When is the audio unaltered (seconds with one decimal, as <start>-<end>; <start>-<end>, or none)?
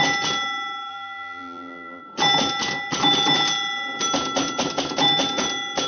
0.0-0.9; 2.0-5.9